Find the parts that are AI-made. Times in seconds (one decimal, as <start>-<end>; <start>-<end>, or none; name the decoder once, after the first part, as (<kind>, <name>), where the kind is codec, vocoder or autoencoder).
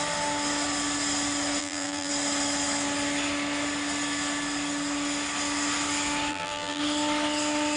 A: 1.6-2.1 (vocoder, BigVGAN v2); 6.3-6.8